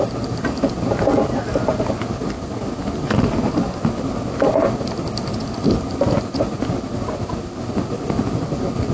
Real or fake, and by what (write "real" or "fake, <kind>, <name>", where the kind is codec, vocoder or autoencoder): real